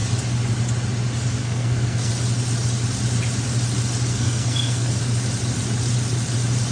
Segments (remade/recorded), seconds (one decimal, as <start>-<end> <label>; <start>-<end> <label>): 0.0-1.4 recorded; 1.4-2.1 remade; 2.1-4.1 recorded; 4.1-4.9 remade; 4.9-6.7 recorded